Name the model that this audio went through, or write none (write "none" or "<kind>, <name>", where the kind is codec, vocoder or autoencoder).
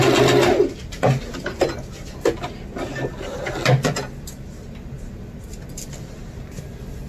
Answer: none